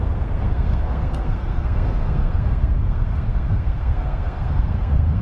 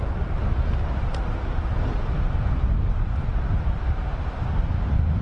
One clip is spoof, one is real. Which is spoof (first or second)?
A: first